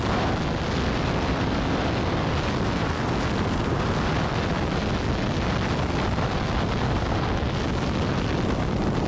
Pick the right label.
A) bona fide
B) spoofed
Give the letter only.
A